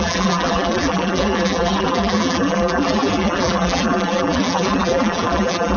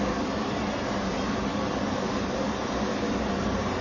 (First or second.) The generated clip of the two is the first